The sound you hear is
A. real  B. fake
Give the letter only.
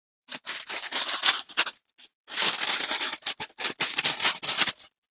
A